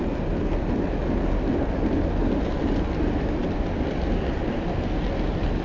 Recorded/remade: recorded